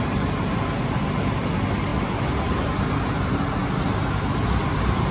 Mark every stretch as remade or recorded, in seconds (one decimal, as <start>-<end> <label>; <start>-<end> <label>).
0.0-5.1 recorded